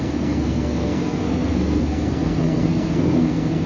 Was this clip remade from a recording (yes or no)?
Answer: yes